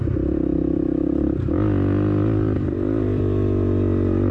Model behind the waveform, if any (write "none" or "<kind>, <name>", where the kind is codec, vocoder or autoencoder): none